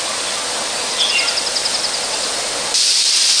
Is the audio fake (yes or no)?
no